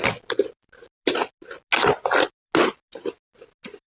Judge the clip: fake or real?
real